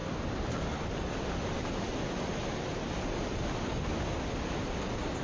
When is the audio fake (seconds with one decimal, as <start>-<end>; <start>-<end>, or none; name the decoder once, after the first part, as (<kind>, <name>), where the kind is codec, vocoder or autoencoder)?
none